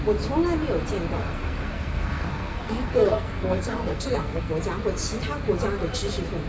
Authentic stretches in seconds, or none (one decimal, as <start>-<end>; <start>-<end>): 0.0-1.2; 4.5-6.5